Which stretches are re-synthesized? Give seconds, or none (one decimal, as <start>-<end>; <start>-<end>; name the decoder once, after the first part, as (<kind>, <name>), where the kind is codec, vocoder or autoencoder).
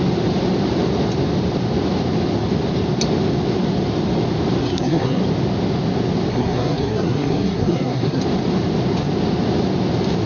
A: 4.6-5.2 (codec, SNAC); 6.3-8.2